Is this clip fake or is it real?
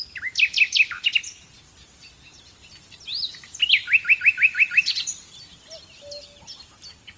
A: real